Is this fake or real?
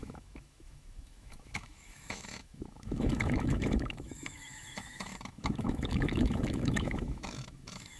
fake